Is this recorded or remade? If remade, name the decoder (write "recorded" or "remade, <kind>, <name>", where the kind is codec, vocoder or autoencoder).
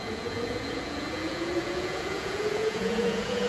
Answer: remade, vocoder, Vocos